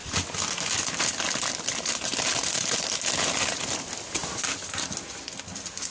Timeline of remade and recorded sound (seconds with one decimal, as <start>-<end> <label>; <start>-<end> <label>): 0.0-5.9 recorded